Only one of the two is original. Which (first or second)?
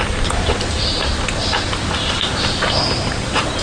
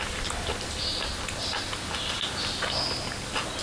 second